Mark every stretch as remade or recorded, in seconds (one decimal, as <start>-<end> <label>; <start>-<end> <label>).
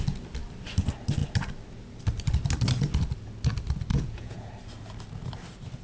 0.0-3.9 recorded; 3.9-4.5 remade; 4.5-5.8 recorded